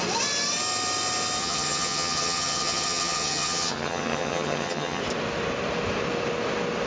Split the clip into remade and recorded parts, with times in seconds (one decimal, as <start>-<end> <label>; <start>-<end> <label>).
0.0-1.4 recorded; 1.4-5.0 remade; 5.0-6.9 recorded